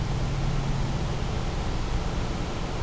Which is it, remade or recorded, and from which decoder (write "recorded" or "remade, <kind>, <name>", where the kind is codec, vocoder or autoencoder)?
recorded